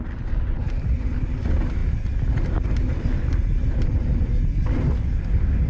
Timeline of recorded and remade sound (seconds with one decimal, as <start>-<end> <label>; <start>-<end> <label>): 0.0-5.7 recorded